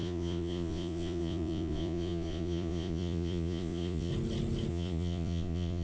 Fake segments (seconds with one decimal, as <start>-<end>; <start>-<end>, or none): 0.0-4.1; 4.7-5.8